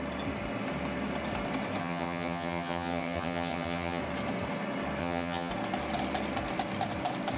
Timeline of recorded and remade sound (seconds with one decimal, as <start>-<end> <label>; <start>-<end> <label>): 0.0-1.8 recorded; 1.8-4.0 remade; 4.0-5.0 recorded; 5.0-5.5 remade; 5.5-7.4 recorded